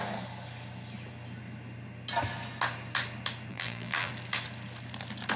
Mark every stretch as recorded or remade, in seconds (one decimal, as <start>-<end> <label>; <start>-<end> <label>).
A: 0.0-3.5 recorded; 3.5-4.1 remade; 4.1-5.4 recorded